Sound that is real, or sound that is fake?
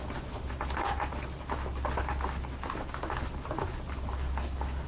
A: real